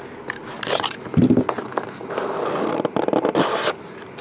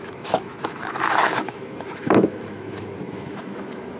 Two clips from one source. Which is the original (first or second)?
first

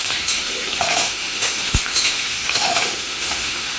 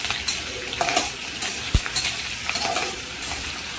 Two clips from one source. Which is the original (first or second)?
second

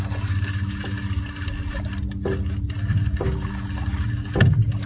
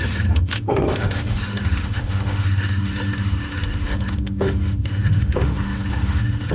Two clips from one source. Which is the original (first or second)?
first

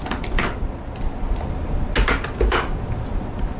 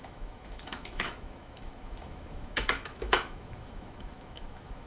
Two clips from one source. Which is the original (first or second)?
first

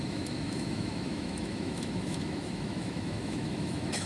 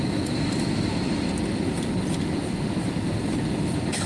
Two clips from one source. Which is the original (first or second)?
second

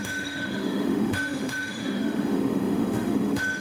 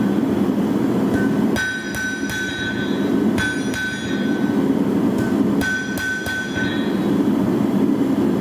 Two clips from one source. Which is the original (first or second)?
second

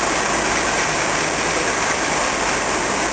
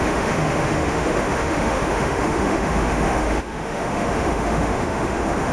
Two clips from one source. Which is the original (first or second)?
first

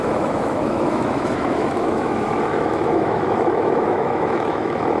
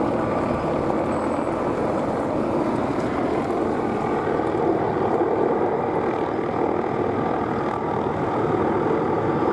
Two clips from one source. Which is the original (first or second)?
second